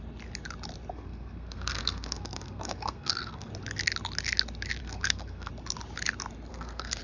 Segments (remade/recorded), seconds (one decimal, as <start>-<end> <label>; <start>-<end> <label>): 0.0-0.9 recorded; 0.9-3.5 remade; 3.5-4.8 recorded; 4.8-5.5 remade; 5.5-6.5 recorded; 6.5-7.0 remade